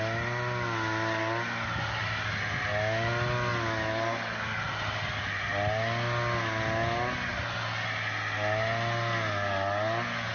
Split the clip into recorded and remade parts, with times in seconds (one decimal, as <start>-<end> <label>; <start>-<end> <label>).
0.0-10.3 recorded

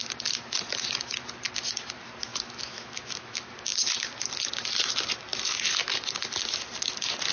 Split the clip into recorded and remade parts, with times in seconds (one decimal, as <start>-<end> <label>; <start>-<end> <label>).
0.0-2.3 recorded; 2.3-3.5 remade; 3.5-7.3 recorded

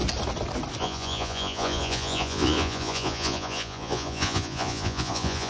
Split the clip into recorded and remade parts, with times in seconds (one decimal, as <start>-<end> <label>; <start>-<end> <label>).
0.0-0.8 recorded; 0.8-5.5 remade

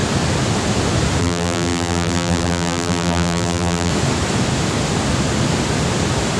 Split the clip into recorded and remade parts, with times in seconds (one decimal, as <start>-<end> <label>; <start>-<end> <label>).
0.0-1.2 recorded; 1.2-3.9 remade; 3.9-6.4 recorded

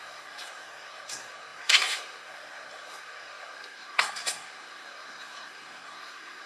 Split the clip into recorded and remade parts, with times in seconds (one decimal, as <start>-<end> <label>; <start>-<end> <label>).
0.0-6.5 remade

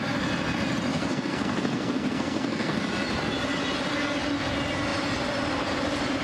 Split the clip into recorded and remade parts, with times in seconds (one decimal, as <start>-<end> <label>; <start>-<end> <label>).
0.0-0.9 recorded; 0.9-2.8 remade; 2.8-6.2 recorded

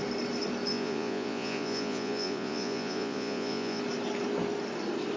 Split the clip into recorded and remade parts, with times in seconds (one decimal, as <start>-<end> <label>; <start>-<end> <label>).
0.0-0.7 recorded; 0.7-3.8 remade; 3.8-5.2 recorded